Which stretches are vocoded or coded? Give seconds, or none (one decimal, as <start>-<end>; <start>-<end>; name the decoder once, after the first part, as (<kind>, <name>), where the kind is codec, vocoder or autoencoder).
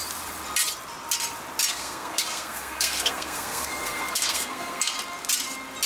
1.7-4.9 (codec, SNAC)